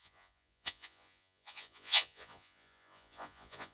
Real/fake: fake